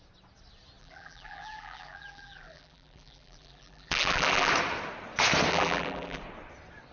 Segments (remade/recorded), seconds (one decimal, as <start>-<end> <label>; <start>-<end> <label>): 0.0-0.8 recorded; 0.8-4.5 remade; 4.5-5.5 recorded; 5.5-6.2 remade; 6.2-6.9 recorded